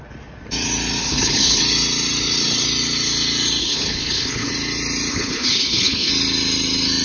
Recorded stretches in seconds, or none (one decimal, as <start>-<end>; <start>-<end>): 0.0-1.0; 1.6-3.6; 4.5-5.1; 6.1-7.0